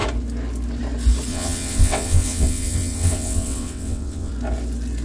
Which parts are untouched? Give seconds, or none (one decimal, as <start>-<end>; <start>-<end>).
0.0-1.3; 4.3-5.0